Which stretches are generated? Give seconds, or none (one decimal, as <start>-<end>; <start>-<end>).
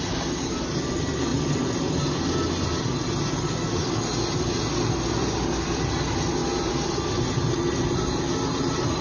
none